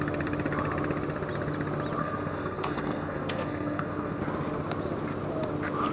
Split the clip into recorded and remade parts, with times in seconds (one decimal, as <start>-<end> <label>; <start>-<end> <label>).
0.0-2.0 recorded; 2.0-4.2 remade; 4.2-5.9 recorded